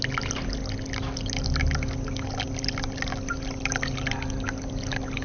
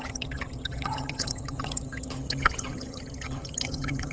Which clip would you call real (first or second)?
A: first